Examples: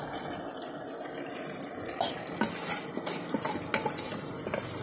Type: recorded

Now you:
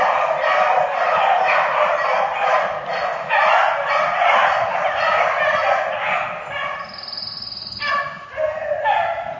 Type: recorded